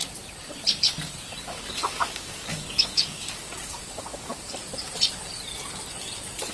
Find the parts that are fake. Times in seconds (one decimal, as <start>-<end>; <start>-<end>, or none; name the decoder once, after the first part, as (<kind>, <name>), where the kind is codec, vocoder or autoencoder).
1.4-4.6 (codec, DAC)